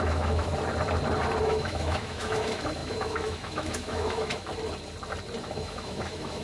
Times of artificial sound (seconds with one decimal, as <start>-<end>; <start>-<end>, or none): 0.0-0.5; 1.4-4.5; 5.4-6.4